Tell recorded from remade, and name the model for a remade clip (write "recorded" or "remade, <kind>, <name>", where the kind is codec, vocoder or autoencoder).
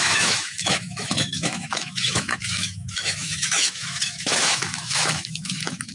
remade, autoencoder, DAC-VAE